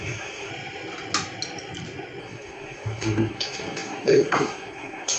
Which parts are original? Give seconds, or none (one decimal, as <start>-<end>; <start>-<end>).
0.5-2.2